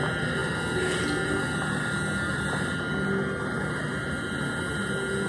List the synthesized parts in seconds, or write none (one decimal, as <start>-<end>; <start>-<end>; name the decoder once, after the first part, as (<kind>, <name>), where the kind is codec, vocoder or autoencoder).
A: none